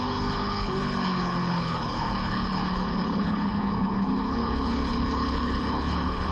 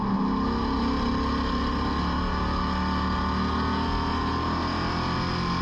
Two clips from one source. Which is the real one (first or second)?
second